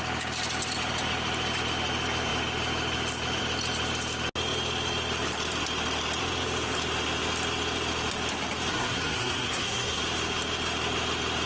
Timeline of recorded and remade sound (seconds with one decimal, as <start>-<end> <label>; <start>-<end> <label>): 0.0-8.7 recorded; 8.7-10.0 remade; 10.0-11.5 recorded